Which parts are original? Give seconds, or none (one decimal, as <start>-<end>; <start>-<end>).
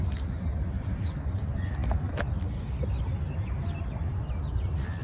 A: 0.0-5.0